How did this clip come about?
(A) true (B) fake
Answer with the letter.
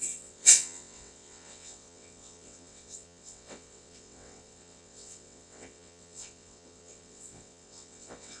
B